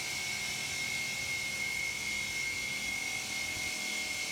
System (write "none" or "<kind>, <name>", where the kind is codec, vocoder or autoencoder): none